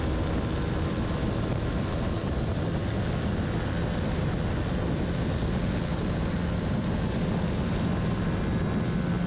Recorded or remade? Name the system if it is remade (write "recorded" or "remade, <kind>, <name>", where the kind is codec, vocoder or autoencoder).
recorded